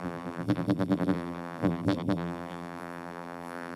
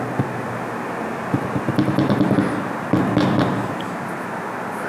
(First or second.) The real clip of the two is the second